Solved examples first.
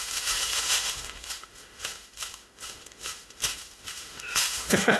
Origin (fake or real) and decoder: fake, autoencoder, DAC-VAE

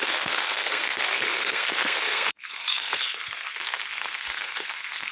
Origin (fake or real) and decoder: fake, codec, SNAC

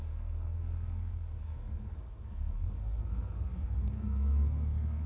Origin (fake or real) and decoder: fake, codec, SNAC